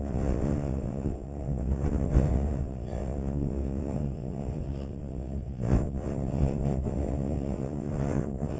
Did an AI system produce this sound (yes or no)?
yes